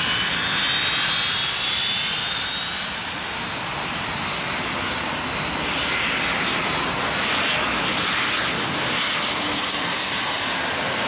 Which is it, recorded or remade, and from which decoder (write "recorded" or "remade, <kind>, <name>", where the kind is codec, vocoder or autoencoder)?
recorded